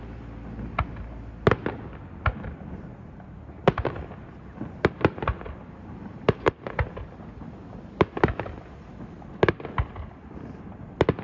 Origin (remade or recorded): recorded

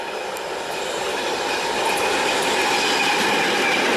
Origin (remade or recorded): recorded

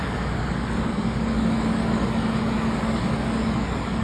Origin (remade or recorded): remade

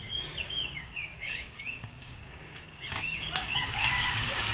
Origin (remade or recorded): remade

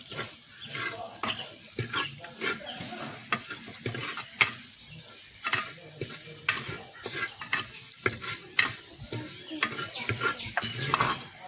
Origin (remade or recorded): recorded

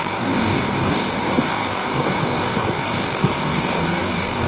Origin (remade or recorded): remade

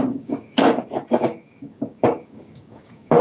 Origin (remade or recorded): remade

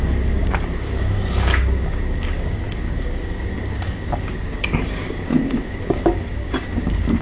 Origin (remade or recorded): remade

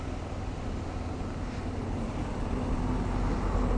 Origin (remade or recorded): recorded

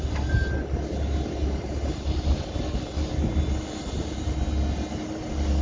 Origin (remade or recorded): recorded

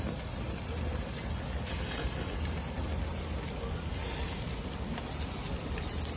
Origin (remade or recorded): recorded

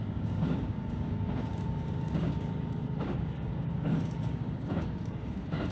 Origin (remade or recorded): remade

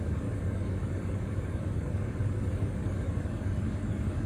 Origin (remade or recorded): remade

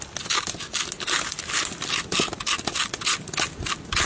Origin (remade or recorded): recorded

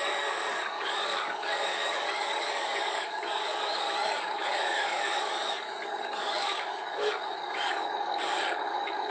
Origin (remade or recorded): remade